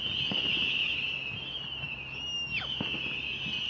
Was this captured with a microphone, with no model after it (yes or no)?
yes